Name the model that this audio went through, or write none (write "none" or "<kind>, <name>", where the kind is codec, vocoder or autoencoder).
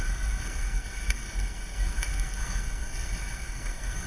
codec, SNAC